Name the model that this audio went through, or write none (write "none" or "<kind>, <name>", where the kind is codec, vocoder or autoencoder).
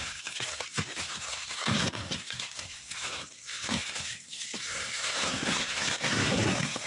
codec, SNAC